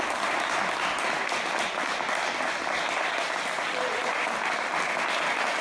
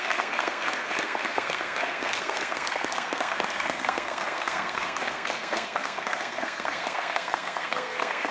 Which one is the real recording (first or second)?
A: first